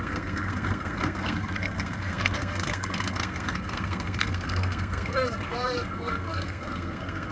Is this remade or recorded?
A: remade